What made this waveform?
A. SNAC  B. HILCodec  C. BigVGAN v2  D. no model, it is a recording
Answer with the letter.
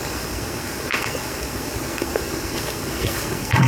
A